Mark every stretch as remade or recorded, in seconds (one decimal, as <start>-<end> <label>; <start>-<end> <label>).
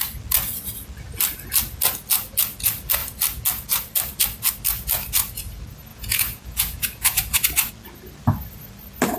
0.0-5.9 recorded; 5.9-7.7 remade; 7.7-9.2 recorded